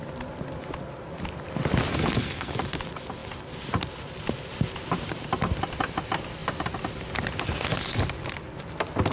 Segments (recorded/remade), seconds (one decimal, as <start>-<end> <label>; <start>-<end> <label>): 0.0-1.9 recorded; 1.9-2.5 remade; 2.5-9.1 recorded